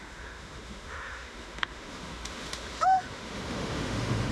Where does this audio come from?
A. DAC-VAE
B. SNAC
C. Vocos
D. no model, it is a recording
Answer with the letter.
A